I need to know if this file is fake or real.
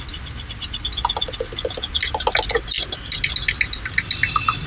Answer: real